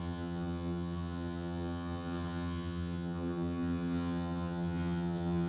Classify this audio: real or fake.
fake